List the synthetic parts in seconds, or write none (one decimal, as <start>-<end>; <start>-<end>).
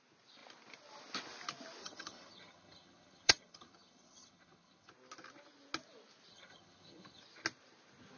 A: 1.8-4.9; 6.3-7.2